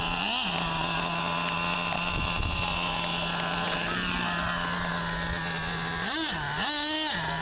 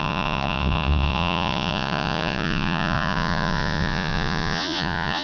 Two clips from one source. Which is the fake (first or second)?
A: second